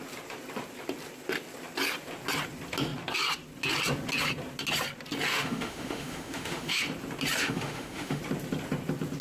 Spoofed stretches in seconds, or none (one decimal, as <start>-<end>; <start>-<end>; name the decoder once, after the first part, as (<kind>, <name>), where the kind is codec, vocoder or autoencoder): 5.3-6.8 (autoencoder, DAC-VAE); 7.4-8.2